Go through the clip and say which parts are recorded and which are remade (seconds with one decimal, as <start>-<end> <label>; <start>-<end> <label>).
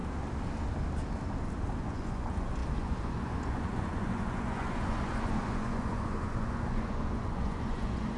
0.0-1.8 recorded; 1.8-8.2 remade